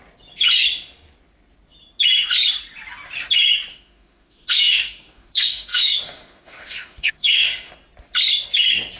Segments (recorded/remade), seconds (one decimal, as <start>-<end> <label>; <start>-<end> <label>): 0.0-3.7 recorded; 3.7-7.7 remade; 7.7-9.0 recorded